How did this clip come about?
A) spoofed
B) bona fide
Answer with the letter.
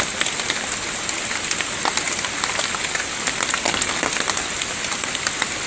B